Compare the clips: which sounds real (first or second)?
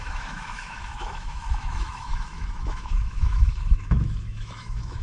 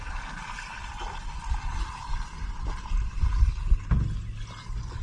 second